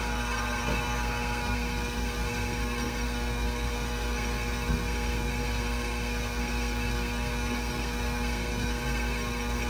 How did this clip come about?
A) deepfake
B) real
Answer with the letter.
A